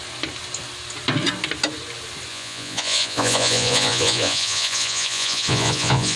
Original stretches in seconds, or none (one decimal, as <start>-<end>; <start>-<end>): 0.0-2.3